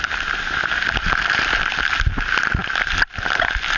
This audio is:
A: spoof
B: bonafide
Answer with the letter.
B